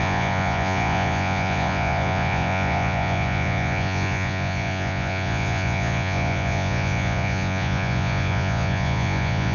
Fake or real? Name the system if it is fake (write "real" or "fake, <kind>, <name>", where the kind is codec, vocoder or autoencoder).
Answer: fake, vocoder, Vocos